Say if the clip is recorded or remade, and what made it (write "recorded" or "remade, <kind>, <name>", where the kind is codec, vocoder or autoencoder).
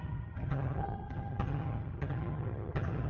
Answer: remade, vocoder, HiFi-GAN